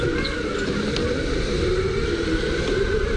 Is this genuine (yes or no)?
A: yes